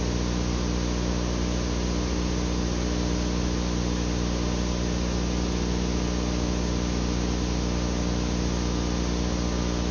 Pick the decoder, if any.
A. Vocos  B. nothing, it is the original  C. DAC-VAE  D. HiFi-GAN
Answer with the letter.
B